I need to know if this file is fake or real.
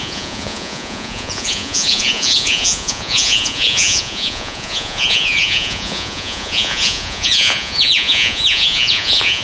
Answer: fake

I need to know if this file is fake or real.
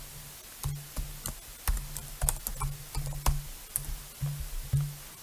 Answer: real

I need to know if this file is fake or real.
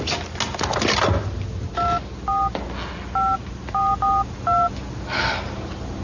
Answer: real